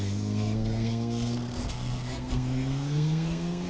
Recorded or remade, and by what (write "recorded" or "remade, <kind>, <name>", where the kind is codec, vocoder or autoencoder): remade, codec, SNAC